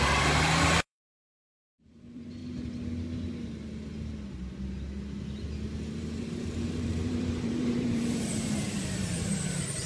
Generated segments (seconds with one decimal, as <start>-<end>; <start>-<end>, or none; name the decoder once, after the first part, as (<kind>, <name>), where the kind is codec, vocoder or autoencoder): 0.0-2.4 (vocoder, BigVGAN v2); 6.0-9.9